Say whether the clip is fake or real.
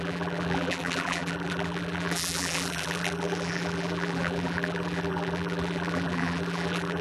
fake